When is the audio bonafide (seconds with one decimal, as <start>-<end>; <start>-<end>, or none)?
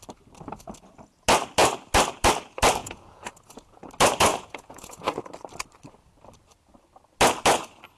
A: 0.0-2.8; 3.9-4.3; 5.2-8.0